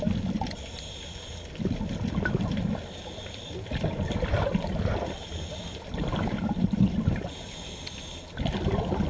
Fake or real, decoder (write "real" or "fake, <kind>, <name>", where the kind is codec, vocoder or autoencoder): real